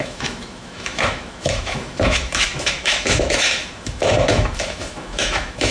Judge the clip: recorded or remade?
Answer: remade